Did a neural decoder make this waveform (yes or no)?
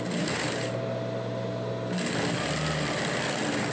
no